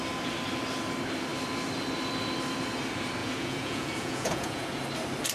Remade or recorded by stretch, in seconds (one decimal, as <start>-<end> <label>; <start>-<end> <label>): 0.0-3.2 recorded; 3.2-4.8 remade; 4.8-5.3 recorded